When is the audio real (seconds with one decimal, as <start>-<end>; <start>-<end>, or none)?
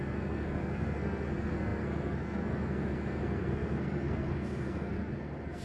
none